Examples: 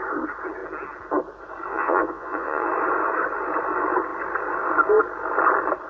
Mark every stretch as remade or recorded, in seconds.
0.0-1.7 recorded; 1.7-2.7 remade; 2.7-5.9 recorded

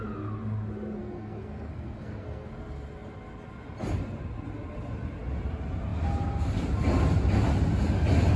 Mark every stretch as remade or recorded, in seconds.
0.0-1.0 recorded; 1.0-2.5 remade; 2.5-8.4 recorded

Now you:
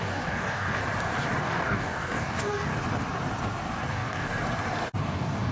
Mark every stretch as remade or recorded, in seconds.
0.0-0.8 remade; 0.8-1.4 recorded; 1.4-2.7 remade; 2.7-3.9 recorded; 3.9-4.3 remade; 4.3-5.0 recorded; 5.0-5.5 remade

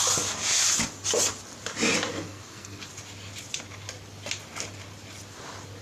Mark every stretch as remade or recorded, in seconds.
0.0-2.1 recorded; 2.1-2.9 remade; 2.9-5.8 recorded